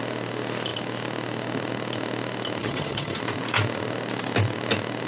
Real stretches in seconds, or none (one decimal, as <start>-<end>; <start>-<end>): 0.0-2.6; 3.2-5.1